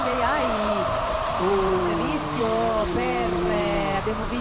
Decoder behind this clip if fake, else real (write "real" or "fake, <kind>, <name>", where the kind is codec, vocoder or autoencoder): fake, vocoder, BigVGAN v2